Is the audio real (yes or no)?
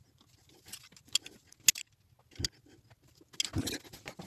yes